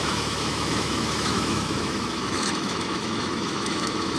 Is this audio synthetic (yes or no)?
yes